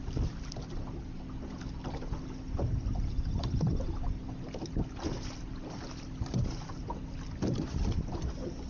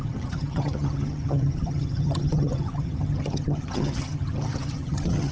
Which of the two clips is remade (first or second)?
second